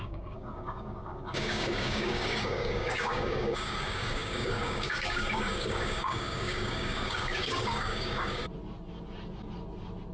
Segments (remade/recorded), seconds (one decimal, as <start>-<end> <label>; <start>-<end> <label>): 0.0-8.4 remade; 8.4-10.1 recorded